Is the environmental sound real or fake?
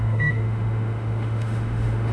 fake